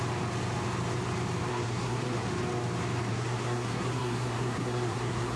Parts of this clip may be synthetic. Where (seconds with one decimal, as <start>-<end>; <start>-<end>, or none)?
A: 1.5-2.3; 3.1-5.4